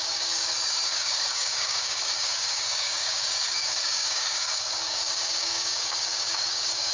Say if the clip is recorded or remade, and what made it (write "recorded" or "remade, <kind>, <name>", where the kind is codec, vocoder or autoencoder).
remade, codec, DAC